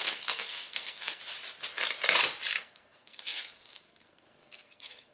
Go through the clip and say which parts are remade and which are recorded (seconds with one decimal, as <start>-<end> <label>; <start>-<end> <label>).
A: 0.0-1.2 remade; 1.2-2.5 recorded; 2.5-5.1 remade

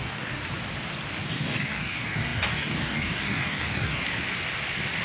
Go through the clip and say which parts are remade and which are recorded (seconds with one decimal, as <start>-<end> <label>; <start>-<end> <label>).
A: 0.0-0.4 remade; 0.4-1.2 recorded; 1.2-4.0 remade; 4.0-5.0 recorded

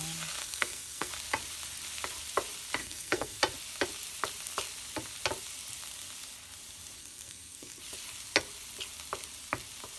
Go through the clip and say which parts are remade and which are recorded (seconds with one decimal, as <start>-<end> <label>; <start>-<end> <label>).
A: 0.0-0.4 recorded; 0.4-1.1 remade; 1.1-2.8 recorded; 2.8-3.4 remade; 3.4-7.0 recorded; 7.0-7.8 remade; 7.8-10.0 recorded